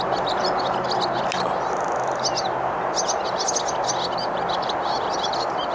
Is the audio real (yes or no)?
yes